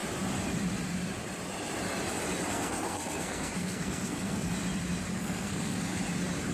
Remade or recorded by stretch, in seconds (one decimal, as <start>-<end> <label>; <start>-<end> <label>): 0.0-2.5 recorded; 2.5-4.5 remade; 4.5-5.1 recorded; 5.1-6.0 remade; 6.0-6.5 recorded

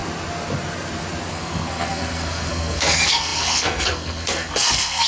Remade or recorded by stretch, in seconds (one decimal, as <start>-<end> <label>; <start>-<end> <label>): 0.0-1.3 recorded; 1.3-5.1 remade